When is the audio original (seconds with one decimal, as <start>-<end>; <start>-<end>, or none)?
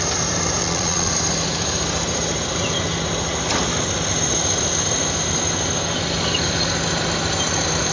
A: 0.0-0.6; 1.1-7.9